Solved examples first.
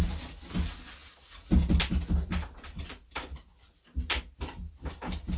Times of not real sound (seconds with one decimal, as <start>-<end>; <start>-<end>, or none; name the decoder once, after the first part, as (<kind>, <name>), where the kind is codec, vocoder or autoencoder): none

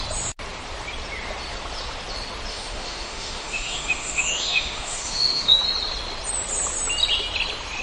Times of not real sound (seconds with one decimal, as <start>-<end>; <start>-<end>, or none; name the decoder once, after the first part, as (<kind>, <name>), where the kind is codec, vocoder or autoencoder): 2.5-5.6 (autoencoder, DAC-VAE)

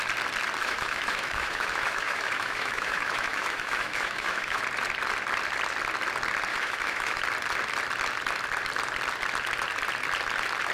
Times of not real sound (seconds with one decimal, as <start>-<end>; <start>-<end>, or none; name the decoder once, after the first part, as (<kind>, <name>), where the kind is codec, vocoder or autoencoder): 0.6-4.6 (autoencoder, DAC-VAE); 6.5-7.2

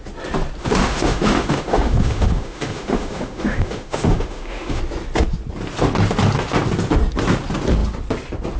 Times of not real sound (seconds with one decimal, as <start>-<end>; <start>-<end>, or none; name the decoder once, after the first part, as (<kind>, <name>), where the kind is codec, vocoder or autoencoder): 0.6-4.8 (autoencoder, DAC-VAE)

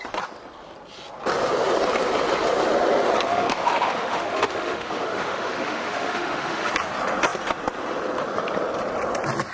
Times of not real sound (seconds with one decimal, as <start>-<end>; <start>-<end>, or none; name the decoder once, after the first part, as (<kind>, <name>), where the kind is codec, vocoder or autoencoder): 3.3-6.7 (autoencoder, DAC-VAE)